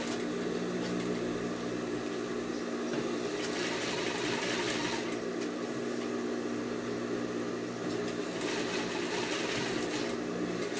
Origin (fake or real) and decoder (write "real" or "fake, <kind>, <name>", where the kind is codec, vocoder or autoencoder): real